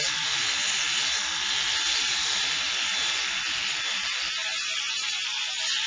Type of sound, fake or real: real